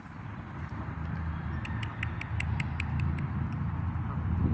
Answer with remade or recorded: recorded